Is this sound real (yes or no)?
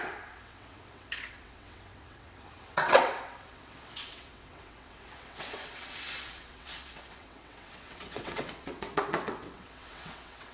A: no